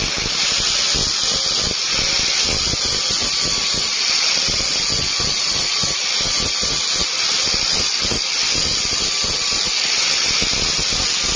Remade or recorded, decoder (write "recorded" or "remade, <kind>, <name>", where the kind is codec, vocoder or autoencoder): recorded